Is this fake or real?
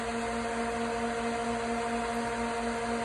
real